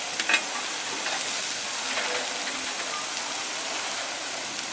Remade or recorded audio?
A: recorded